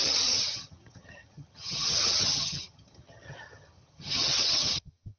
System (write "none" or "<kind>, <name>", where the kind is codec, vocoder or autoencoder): vocoder, HiFi-GAN